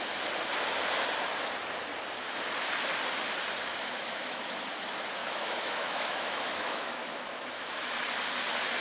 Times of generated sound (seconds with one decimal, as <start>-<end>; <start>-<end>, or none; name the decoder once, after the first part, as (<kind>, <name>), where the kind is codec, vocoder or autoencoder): 3.7-4.5 (autoencoder, DAC-VAE); 5.2-7.9